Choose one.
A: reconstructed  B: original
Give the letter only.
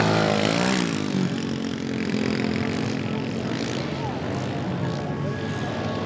B